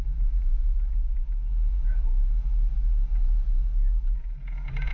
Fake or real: fake